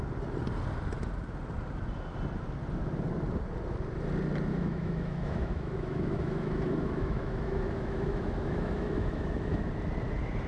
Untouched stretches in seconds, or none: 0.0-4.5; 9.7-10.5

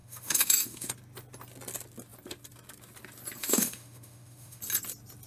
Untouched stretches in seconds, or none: 0.9-3.4; 4.6-5.3

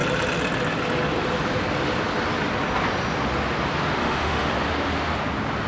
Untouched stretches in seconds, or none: 0.0-4.0; 4.5-5.7

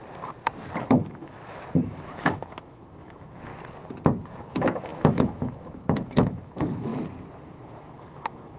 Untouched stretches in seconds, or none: 0.0-0.8; 3.5-4.5; 6.9-7.4